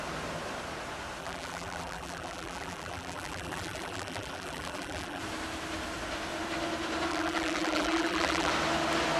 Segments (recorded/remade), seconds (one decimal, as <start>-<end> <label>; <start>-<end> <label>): 0.0-1.2 recorded; 1.2-5.2 remade; 5.2-7.1 recorded; 7.1-8.5 remade; 8.5-9.2 recorded